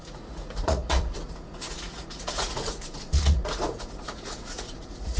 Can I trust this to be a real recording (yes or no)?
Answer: no